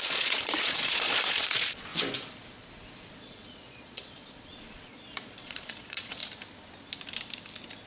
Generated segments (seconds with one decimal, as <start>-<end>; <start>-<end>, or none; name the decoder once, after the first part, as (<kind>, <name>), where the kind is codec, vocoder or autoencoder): 0.0-1.9 (vocoder, Vocos); 3.1-6.2